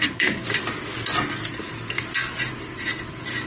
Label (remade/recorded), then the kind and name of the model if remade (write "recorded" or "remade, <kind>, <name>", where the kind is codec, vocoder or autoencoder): recorded